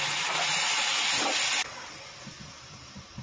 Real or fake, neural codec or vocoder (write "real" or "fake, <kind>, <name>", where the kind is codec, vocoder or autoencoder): real